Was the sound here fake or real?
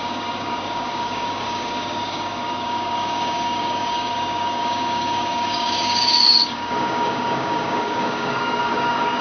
fake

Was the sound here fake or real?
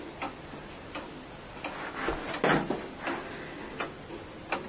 real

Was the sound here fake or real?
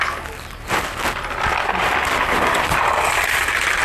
real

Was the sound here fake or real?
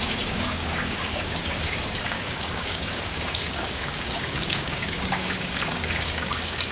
fake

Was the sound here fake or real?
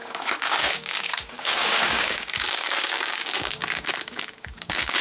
fake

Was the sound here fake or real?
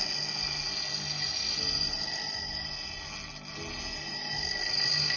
real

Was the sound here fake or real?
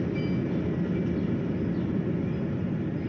real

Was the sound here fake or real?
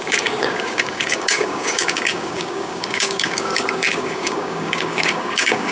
fake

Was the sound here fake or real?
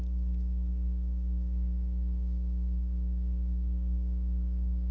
fake